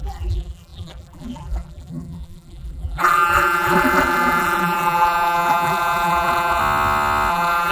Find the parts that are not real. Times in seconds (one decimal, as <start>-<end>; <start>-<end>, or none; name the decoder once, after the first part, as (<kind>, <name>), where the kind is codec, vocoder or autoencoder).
0.0-6.6 (vocoder, BigVGAN v2); 7.3-7.7